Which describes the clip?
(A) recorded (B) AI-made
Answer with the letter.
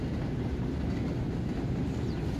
A